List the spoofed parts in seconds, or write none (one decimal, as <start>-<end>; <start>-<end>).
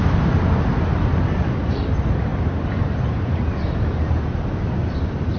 2.3-3.8